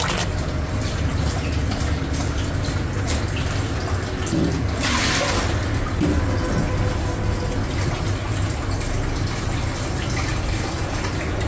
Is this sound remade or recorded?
recorded